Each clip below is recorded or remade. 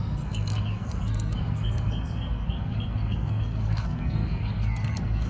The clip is remade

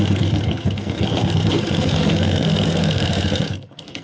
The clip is remade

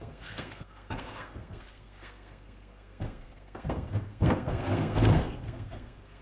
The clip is remade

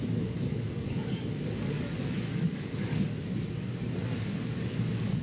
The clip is remade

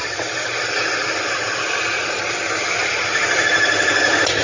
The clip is recorded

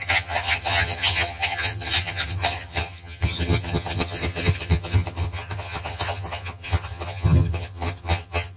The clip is remade